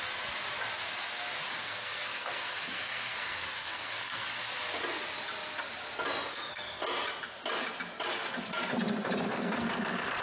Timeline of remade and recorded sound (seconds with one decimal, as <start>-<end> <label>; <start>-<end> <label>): 0.0-1.4 recorded; 1.4-4.4 remade; 4.4-6.3 recorded; 6.3-6.8 remade; 6.8-9.3 recorded; 9.3-10.2 remade